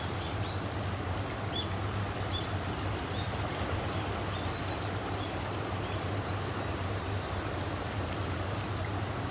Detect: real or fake real